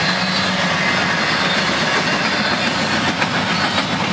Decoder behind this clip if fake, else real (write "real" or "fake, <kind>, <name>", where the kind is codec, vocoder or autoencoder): real